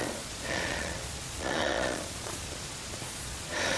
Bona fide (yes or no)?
no